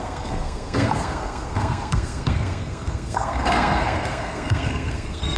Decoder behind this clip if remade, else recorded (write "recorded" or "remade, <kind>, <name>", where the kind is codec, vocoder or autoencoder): remade, codec, SNAC